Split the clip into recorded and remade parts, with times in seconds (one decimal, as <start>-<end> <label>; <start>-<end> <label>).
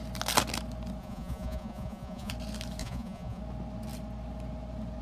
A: 0.0-1.0 recorded; 1.0-2.3 remade; 2.3-2.8 recorded; 2.8-3.4 remade; 3.4-5.0 recorded